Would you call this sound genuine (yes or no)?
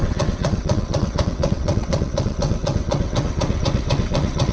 no